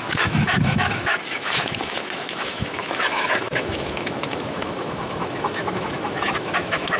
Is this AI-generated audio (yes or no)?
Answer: yes